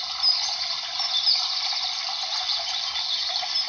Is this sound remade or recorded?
recorded